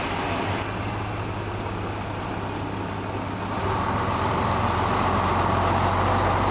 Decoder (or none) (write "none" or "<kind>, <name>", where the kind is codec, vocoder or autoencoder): none